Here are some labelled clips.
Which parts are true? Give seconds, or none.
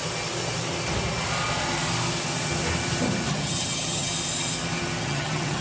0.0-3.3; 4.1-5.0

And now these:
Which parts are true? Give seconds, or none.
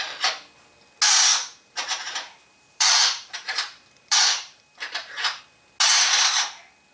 0.0-1.3; 5.4-6.9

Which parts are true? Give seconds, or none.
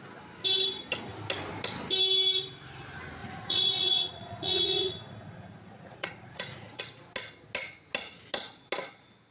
0.0-3.2; 6.8-9.3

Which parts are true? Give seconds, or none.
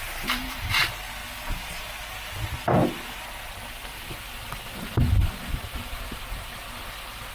1.2-5.6; 6.5-7.3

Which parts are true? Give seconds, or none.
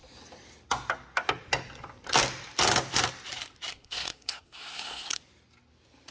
0.0-3.7; 5.2-6.1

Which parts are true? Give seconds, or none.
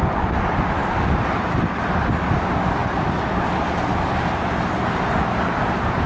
0.0-6.1